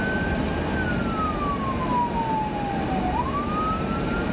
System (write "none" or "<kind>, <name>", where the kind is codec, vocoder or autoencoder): none